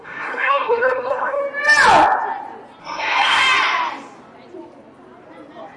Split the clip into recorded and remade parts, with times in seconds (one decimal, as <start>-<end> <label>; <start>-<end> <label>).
0.0-1.4 remade; 1.4-2.8 recorded; 2.8-3.4 remade; 3.4-5.8 recorded